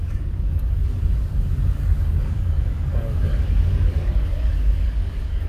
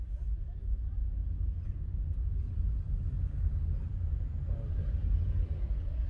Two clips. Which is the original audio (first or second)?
second